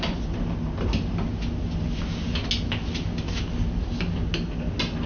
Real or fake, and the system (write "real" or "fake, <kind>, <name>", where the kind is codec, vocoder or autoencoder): real